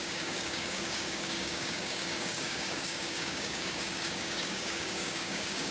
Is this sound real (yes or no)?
no